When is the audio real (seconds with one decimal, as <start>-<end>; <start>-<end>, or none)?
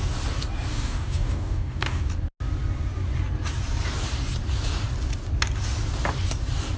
0.0-0.7; 2.1-6.8